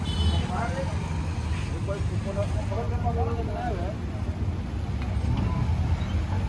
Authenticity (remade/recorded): recorded